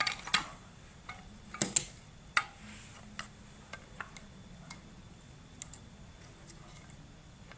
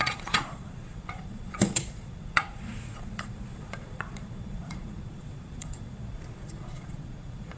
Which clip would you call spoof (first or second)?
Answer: second